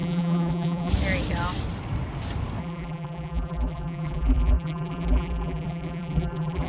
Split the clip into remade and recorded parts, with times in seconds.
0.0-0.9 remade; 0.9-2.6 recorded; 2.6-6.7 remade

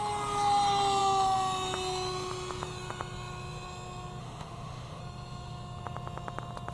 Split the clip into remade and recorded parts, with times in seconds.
0.0-4.2 recorded; 4.2-5.0 remade; 5.0-6.7 recorded